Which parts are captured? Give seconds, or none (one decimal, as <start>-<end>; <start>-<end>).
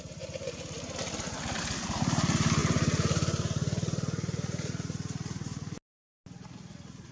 0.0-7.1